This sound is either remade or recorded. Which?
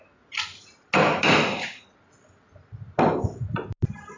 recorded